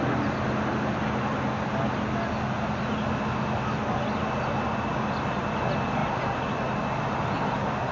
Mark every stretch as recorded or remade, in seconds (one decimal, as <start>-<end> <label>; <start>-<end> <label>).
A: 0.0-7.9 recorded